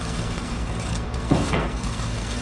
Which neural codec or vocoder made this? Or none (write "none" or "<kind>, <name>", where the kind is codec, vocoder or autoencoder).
codec, SNAC